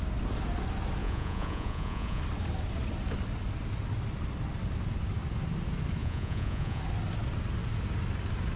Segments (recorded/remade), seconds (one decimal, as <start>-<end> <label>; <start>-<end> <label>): 0.0-1.0 recorded; 1.0-2.2 remade; 2.2-6.0 recorded; 6.0-6.8 remade; 6.8-8.6 recorded